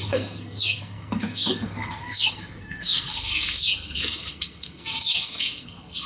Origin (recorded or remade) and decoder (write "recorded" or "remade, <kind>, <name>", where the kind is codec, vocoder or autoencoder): remade, codec, SNAC